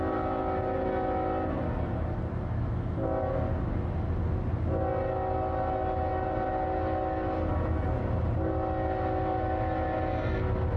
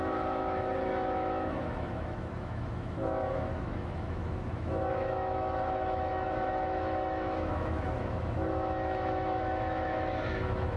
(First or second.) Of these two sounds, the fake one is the second